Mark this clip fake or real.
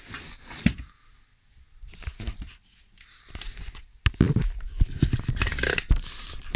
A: real